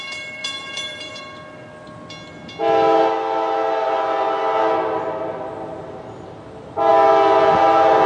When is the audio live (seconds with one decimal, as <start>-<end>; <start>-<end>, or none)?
0.0-0.4; 1.2-8.1